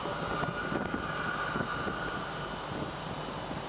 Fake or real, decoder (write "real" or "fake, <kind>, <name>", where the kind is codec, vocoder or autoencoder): real